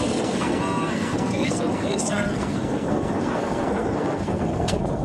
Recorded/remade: remade